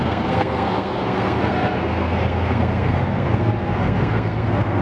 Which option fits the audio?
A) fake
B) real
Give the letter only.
A